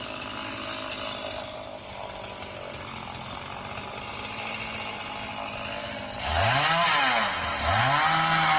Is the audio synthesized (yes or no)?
no